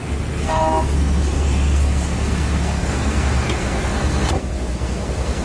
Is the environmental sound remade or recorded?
remade